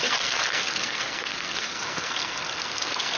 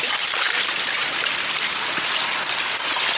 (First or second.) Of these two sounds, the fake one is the first